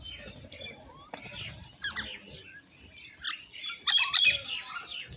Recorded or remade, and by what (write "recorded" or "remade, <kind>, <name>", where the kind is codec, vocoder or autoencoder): recorded